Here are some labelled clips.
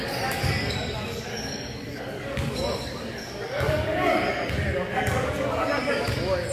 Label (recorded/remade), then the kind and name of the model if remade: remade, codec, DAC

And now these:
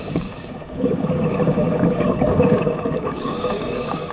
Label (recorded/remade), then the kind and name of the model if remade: remade, codec, DAC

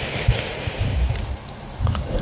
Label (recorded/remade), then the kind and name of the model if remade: recorded